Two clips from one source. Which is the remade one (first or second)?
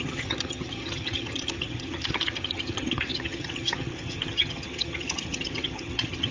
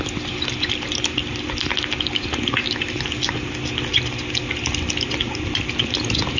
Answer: first